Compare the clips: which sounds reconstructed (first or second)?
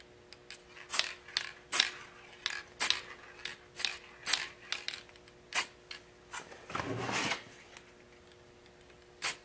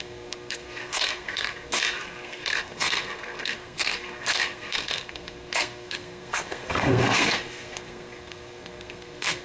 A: second